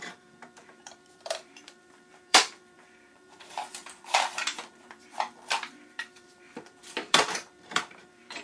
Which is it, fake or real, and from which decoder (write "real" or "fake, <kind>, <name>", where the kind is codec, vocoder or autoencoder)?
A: fake, vocoder, BigVGAN v2